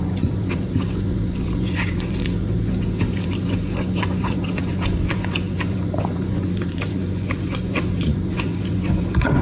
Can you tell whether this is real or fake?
fake